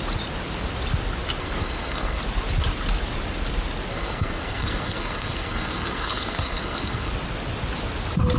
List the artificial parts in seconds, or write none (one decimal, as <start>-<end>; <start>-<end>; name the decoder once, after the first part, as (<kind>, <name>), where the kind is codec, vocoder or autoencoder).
1.4-2.2 (codec, SNAC); 3.9-7.1